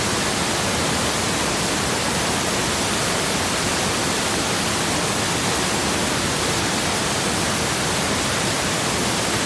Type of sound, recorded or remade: recorded